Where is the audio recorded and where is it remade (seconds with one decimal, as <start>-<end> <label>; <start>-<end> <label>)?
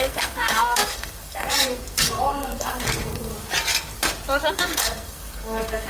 0.0-3.3 remade; 3.3-4.5 recorded; 4.5-5.9 remade